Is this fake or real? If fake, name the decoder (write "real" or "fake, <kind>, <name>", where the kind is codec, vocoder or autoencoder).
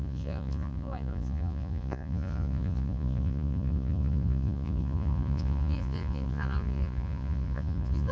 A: fake, vocoder, Vocos